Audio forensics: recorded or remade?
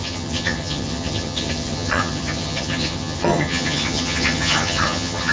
remade